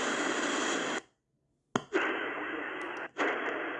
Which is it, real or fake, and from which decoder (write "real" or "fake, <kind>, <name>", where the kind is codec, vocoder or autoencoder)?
real